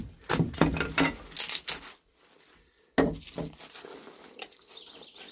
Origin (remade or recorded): recorded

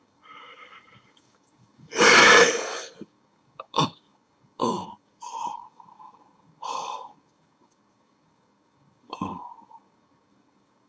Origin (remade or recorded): remade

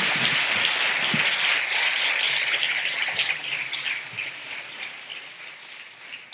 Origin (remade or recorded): recorded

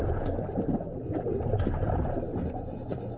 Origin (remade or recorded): recorded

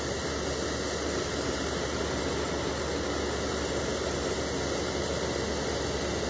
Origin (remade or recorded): recorded